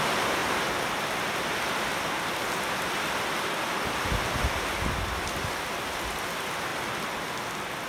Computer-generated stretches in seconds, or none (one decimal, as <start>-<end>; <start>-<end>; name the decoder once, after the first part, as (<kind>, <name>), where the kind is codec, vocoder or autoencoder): 0.4-0.9 (vocoder, BigVGAN v2)